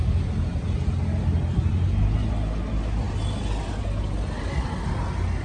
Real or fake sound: real